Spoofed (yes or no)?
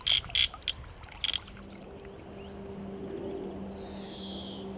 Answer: no